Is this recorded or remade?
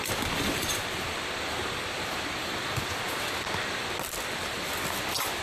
recorded